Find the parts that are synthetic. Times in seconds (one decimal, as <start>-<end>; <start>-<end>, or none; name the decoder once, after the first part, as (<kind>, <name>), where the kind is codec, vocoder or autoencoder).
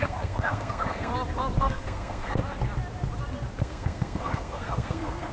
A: 0.0-1.1 (codec, SNAC); 1.6-2.4; 3.6-5.3